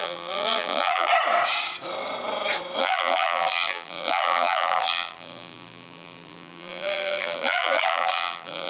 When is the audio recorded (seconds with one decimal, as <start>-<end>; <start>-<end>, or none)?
1.1-2.8